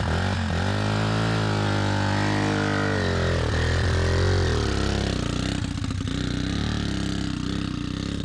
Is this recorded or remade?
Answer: recorded